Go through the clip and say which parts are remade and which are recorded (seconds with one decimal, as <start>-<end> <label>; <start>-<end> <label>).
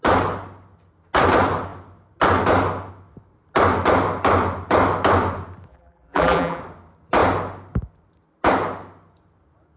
0.0-5.7 recorded; 5.7-6.6 remade; 6.6-9.8 recorded